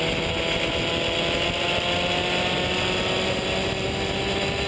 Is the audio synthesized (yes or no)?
no